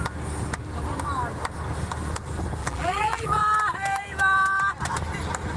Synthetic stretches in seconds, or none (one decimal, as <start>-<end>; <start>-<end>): 2.6-3.4